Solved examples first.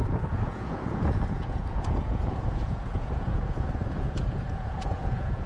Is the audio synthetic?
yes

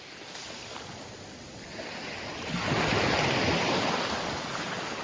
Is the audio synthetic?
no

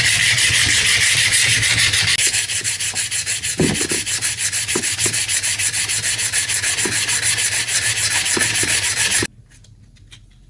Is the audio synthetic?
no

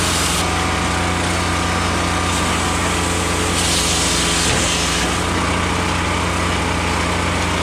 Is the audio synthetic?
no